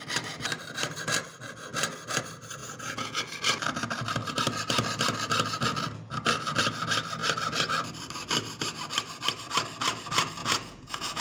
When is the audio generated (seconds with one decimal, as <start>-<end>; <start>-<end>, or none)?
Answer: 2.6-3.2; 10.4-11.2